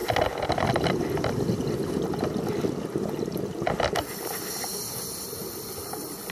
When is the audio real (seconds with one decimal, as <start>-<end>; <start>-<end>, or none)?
0.0-6.3